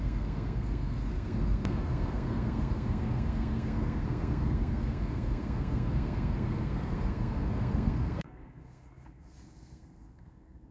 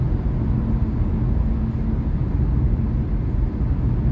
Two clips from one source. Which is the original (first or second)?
second